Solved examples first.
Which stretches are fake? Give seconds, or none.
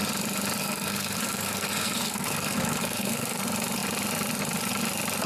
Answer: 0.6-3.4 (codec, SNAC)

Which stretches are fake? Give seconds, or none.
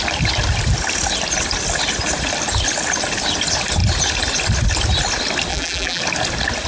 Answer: 5.5-6.0 (vocoder, BigVGAN v2)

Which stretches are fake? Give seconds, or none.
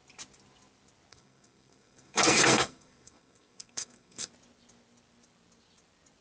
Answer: 1.1-4.3 (codec, SNAC)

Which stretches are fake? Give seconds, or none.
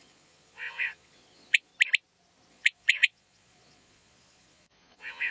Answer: 0.0-1.7 (vocoder, Vocos); 2.5-5.3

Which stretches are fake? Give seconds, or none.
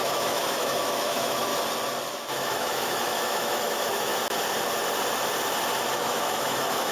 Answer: 0.0-1.5 (autoencoder, DAC-VAE); 2.1-4.1; 5.9-6.9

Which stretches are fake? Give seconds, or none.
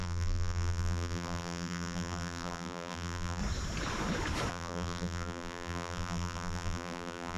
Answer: 0.0-3.4 (vocoder, BigVGAN v2); 4.5-7.4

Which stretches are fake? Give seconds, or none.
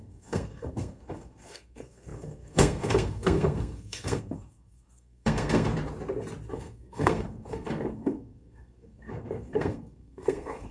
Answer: 0.0-5.7 (codec, SNAC); 6.5-10.7